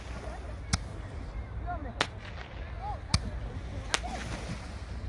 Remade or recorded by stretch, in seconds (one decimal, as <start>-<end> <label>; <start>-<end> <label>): 0.0-5.1 recorded